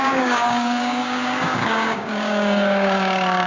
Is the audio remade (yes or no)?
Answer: yes